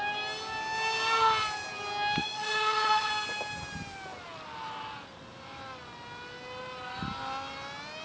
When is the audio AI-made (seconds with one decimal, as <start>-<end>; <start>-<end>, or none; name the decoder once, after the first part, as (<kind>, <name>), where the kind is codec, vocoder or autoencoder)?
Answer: 2.2-3.1 (vocoder, Vocos)